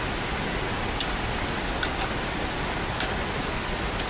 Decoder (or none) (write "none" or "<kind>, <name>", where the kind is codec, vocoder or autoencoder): none